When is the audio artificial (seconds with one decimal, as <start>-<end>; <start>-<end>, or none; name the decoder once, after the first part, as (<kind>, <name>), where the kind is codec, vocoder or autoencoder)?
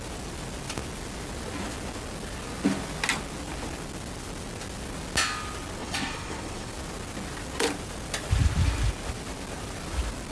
5.8-6.7 (vocoder, WaveNeXt)